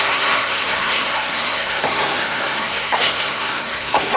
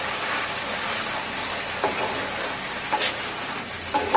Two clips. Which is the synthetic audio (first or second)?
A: first